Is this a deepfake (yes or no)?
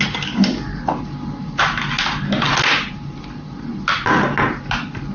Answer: no